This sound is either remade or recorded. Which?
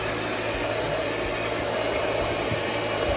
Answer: recorded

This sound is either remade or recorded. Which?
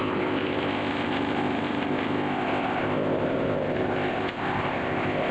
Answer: remade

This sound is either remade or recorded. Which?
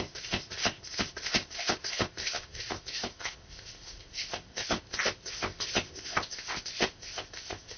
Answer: remade